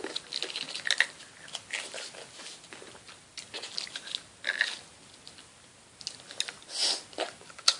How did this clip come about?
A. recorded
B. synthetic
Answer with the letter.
A